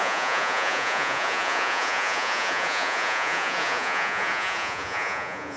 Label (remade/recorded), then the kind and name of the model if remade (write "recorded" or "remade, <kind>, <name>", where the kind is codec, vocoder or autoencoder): remade, vocoder, Vocos